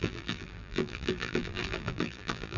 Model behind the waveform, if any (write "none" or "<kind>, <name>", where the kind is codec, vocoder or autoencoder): vocoder, BigVGAN v2